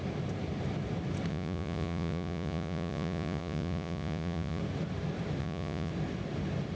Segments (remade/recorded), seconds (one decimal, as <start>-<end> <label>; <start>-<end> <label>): 0.0-1.3 recorded; 1.3-4.6 remade; 4.6-5.4 recorded; 5.4-5.9 remade; 5.9-6.8 recorded